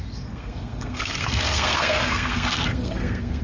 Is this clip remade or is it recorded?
remade